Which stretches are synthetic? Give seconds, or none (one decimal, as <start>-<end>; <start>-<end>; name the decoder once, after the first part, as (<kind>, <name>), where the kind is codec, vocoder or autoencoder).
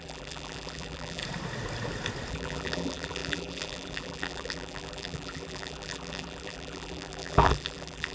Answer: 0.0-1.2 (vocoder, BigVGAN v2); 2.3-8.1